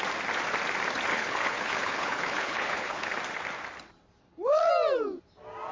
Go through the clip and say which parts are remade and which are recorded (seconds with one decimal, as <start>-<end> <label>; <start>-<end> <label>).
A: 0.0-1.1 recorded; 1.1-3.2 remade; 3.2-4.2 recorded; 4.2-4.7 remade; 4.7-5.7 recorded